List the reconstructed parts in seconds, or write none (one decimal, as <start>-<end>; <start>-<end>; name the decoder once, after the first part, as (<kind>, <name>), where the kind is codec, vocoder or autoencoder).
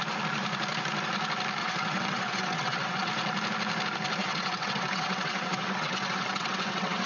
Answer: 1.6-3.1 (vocoder, WaveNeXt); 4.2-7.1